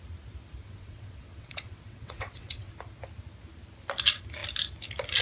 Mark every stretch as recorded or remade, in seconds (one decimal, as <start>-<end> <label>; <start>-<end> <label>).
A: 0.0-0.6 recorded; 0.6-2.7 remade; 2.7-5.2 recorded